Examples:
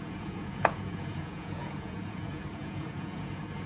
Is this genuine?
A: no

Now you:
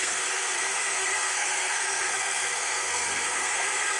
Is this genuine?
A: no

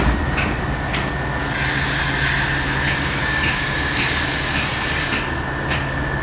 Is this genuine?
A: yes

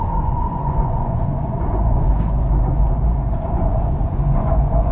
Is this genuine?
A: no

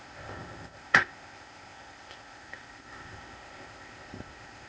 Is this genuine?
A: no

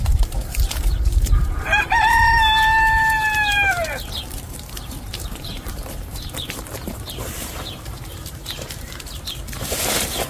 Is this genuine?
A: no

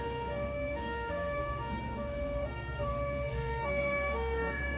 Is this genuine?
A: no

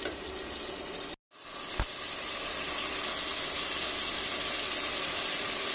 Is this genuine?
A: yes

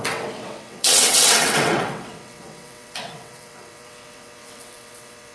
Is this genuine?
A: no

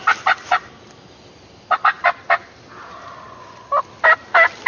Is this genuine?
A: yes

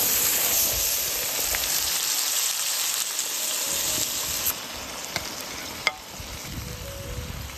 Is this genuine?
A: yes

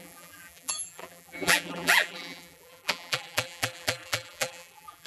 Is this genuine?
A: no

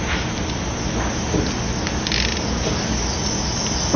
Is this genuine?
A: yes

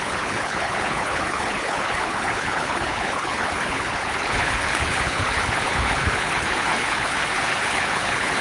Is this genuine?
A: no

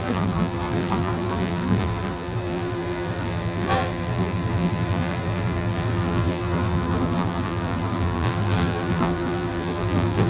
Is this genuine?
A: no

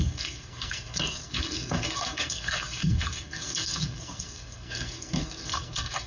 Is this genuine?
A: no